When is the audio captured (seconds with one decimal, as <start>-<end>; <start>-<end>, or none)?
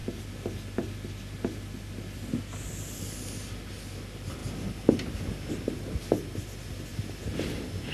0.0-7.9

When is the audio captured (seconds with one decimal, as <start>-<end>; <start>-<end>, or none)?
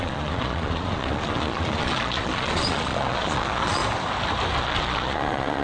3.8-4.6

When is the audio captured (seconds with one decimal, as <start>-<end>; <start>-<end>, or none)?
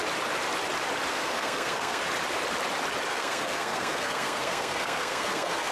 0.0-1.1; 2.0-3.1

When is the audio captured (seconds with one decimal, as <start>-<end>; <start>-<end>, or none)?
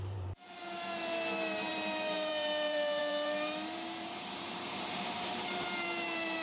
none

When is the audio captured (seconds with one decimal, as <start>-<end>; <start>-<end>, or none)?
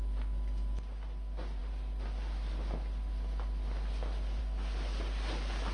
0.0-5.7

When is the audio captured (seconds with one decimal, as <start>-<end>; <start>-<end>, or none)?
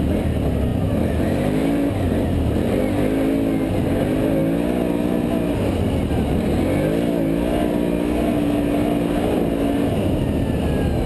0.0-0.7; 2.8-11.1